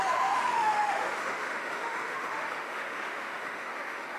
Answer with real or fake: fake